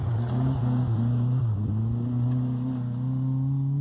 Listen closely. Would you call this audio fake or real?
real